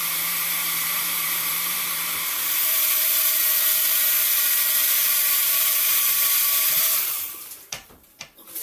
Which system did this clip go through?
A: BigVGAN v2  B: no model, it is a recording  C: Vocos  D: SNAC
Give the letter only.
A